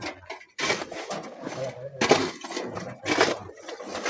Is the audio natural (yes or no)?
yes